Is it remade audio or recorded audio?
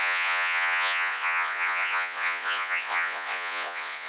remade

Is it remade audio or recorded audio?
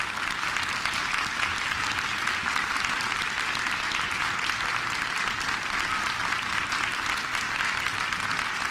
recorded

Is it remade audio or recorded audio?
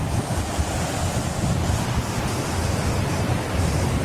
recorded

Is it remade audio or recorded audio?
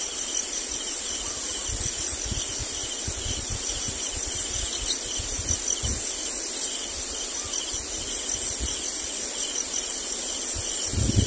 recorded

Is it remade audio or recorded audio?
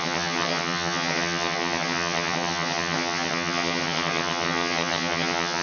remade